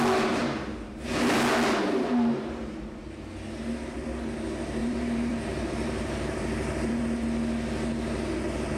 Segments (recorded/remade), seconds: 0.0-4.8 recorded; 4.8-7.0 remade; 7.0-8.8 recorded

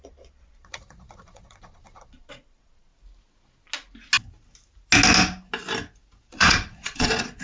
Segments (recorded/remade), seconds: 0.0-2.9 remade; 2.9-6.3 recorded; 6.3-7.4 remade

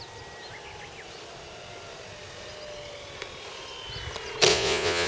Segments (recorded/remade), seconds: 0.0-4.5 recorded; 4.5-5.1 remade

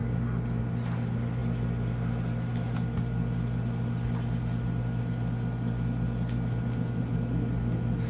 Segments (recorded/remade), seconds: 0.0-8.1 recorded

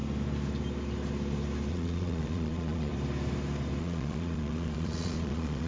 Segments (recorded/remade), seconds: 0.0-1.7 recorded; 1.7-2.9 remade; 2.9-3.8 recorded; 3.8-5.7 remade

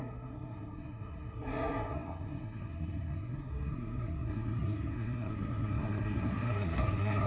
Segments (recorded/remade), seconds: 0.0-7.3 remade

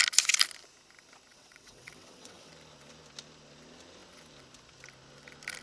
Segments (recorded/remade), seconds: 0.0-1.3 recorded; 1.3-2.5 remade; 2.5-5.6 recorded

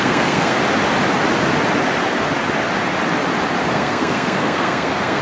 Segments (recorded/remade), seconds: 0.0-0.6 remade; 0.6-3.7 recorded; 3.7-5.2 remade